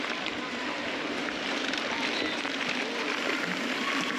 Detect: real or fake fake